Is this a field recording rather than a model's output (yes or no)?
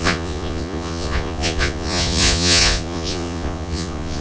no